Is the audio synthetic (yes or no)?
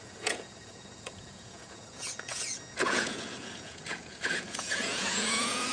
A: yes